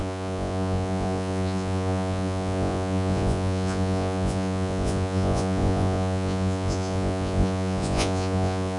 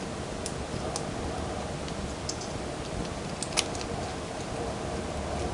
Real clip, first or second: second